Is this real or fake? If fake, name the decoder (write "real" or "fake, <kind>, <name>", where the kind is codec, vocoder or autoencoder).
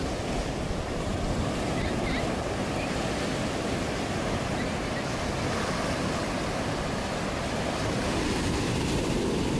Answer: real